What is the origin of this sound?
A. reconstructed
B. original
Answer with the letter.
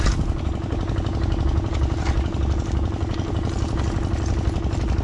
B